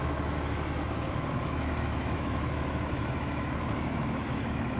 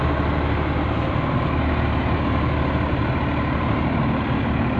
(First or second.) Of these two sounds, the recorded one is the second